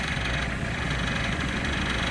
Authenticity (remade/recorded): remade